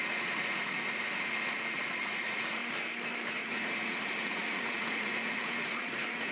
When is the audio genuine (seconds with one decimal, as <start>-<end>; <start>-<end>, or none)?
2.6-3.3